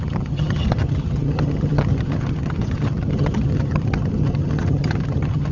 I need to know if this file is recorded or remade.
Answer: remade